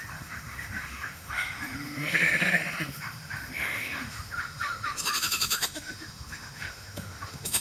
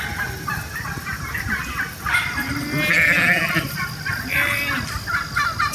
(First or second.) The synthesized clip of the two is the first